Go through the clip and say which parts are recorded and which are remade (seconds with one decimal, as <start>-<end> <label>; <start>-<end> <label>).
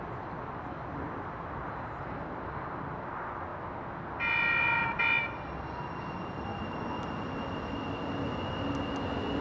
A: 0.0-9.4 recorded